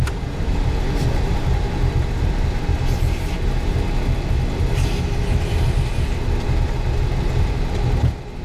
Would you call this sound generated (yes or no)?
no